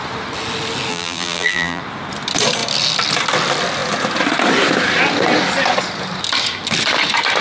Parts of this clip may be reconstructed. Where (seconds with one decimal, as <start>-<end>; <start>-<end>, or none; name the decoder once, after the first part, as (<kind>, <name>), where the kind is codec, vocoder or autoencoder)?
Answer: 0.9-1.8 (vocoder, BigVGAN v2)